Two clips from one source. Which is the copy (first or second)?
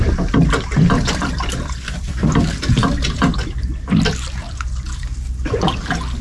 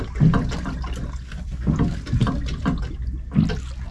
first